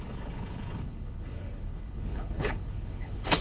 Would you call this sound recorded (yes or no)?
no